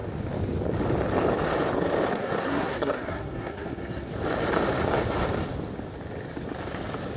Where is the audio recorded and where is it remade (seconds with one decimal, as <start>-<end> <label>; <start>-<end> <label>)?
0.0-2.1 recorded; 2.1-4.1 remade; 4.1-7.2 recorded